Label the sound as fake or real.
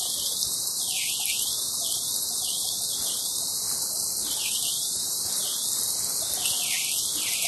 real